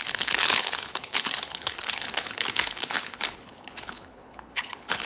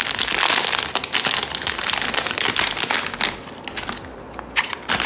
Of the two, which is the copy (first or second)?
first